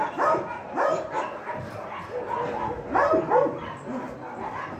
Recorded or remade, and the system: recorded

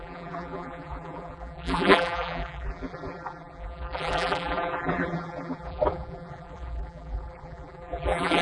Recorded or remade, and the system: remade, vocoder, BigVGAN v2